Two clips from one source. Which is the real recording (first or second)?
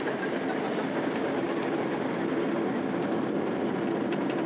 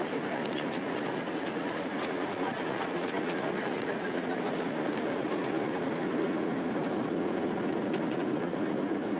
first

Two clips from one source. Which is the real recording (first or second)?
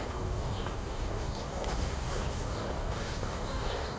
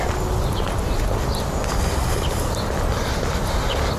second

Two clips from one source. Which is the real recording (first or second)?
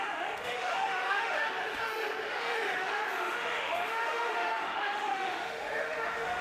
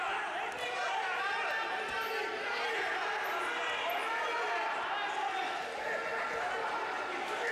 second